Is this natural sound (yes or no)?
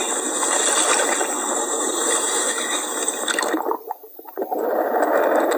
yes